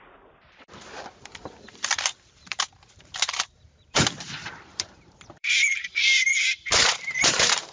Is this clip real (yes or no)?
no